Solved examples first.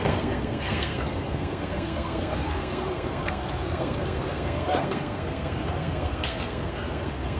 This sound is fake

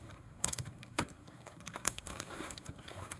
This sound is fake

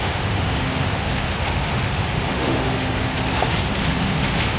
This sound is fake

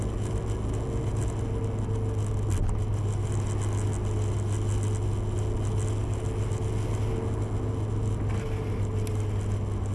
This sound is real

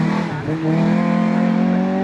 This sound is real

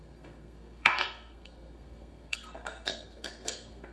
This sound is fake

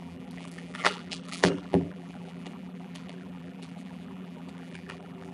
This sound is fake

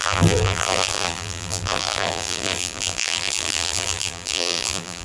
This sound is fake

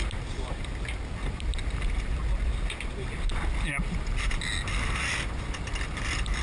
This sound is real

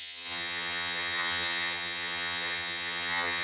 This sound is fake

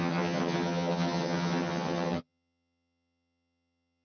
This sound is fake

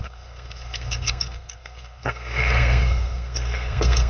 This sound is fake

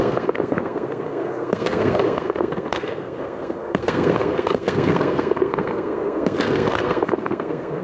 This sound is fake